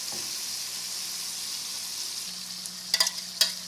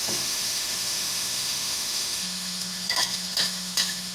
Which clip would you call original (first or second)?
first